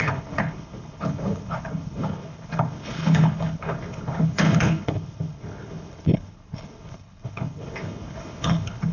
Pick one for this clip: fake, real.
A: fake